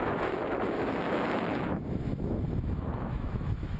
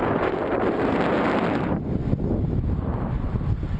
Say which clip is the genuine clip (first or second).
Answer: second